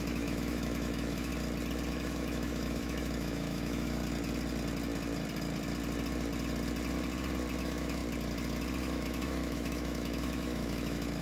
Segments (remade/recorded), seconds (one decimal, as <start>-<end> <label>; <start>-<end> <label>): 0.0-1.3 remade; 1.3-1.9 recorded; 1.9-4.0 remade; 4.0-7.6 recorded; 7.6-8.0 remade; 8.0-8.8 recorded; 8.8-11.2 remade